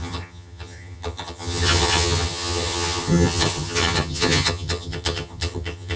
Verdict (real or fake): fake